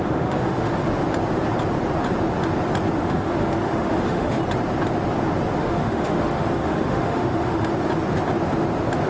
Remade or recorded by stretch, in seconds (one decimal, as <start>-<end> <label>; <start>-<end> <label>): 0.0-0.8 remade; 0.8-2.9 recorded; 2.9-4.4 remade; 4.4-5.6 recorded; 5.6-7.7 remade; 7.7-9.1 recorded

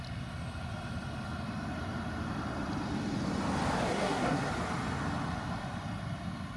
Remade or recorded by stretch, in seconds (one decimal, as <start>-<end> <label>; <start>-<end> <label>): 0.0-3.9 recorded; 3.9-4.5 remade; 4.5-6.6 recorded

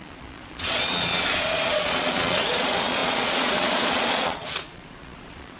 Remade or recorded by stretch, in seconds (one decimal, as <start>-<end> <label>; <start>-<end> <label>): 0.0-5.6 remade

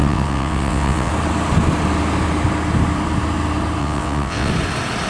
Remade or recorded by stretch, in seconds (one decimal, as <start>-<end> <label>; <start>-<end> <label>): 0.0-1.1 remade; 1.1-3.8 recorded; 3.8-4.5 remade; 4.5-5.1 recorded

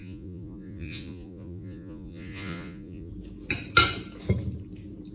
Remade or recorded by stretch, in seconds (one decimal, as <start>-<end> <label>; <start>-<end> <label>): 0.0-3.1 remade; 3.1-5.1 recorded

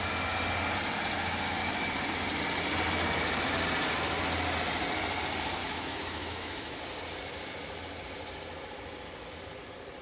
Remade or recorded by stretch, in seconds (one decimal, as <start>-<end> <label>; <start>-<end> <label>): 0.0-5.6 recorded; 5.6-6.8 remade; 6.8-10.0 recorded